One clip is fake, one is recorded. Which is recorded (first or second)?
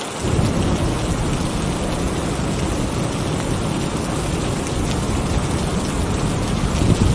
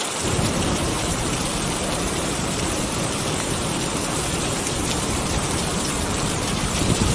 first